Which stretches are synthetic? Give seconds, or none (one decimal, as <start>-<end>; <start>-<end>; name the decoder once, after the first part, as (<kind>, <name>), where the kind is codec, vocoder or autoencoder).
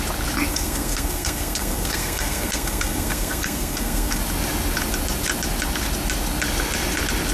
0.5-4.2 (codec, SNAC)